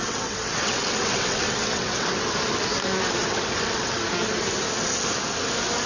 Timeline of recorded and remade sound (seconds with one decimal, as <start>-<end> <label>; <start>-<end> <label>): 0.0-2.2 remade; 2.2-3.2 recorded; 3.2-4.0 remade; 4.0-5.9 recorded